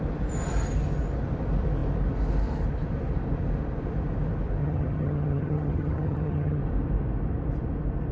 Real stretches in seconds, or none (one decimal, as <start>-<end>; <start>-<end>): 0.0-4.6; 6.6-8.1